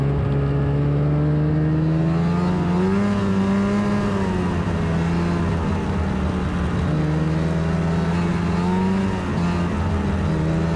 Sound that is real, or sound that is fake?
real